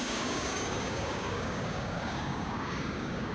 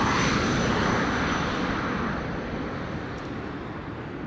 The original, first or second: second